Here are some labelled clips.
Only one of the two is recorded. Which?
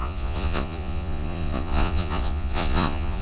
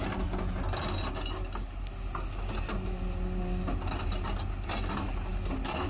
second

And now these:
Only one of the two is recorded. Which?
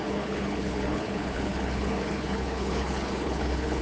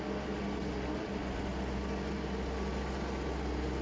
second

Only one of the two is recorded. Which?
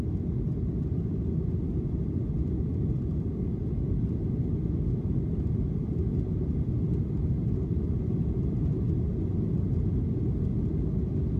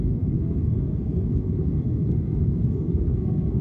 first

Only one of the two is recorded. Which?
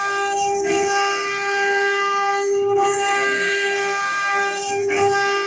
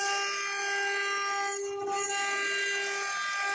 second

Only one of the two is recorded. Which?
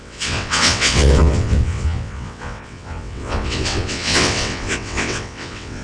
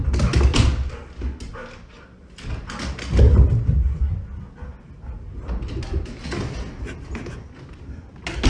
second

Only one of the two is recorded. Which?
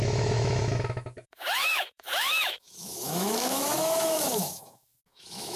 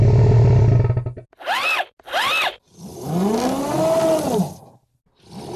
second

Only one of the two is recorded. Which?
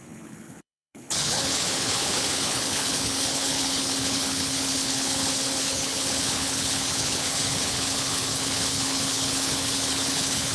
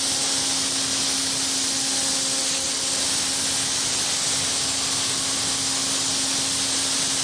second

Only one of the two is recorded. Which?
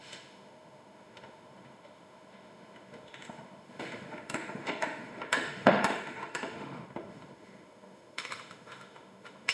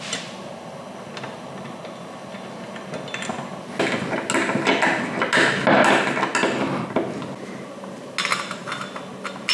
second